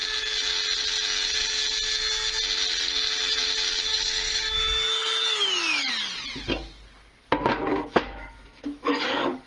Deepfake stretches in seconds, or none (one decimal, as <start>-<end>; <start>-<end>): 3.9-5.9; 7.7-9.5